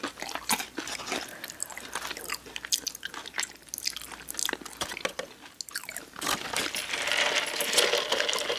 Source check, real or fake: real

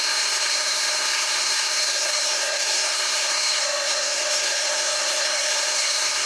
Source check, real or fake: fake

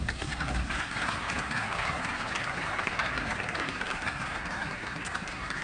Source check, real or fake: fake